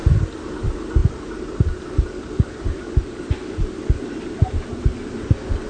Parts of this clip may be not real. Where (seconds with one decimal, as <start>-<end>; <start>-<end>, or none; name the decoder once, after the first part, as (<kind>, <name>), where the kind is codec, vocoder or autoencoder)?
none